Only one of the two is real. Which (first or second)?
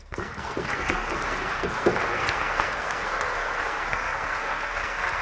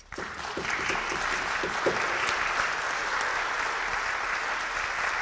second